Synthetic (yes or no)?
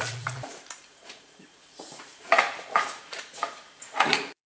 yes